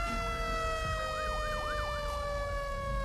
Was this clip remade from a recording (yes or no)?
no